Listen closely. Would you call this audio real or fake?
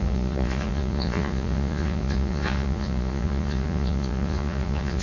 fake